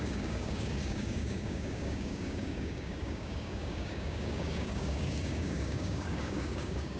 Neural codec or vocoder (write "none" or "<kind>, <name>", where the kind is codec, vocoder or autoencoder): codec, DAC